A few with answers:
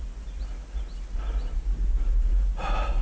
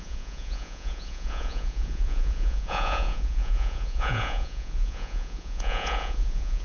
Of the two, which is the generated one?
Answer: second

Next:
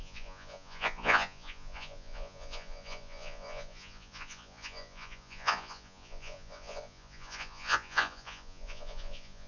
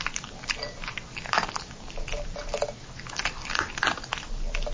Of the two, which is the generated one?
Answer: first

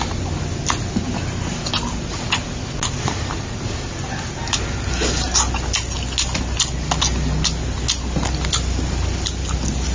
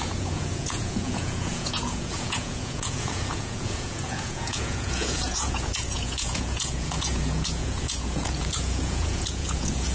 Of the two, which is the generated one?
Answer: second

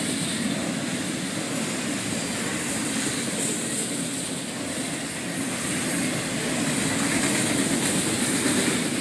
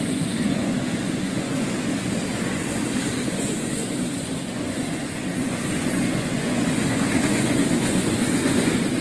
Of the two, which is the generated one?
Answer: second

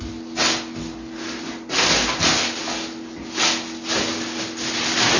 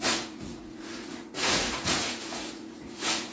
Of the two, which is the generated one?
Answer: second